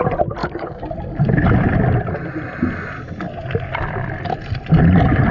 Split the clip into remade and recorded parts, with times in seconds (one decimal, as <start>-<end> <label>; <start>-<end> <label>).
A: 0.0-0.4 recorded; 0.4-0.9 remade; 0.9-5.3 recorded